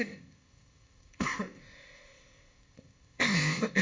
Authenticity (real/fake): fake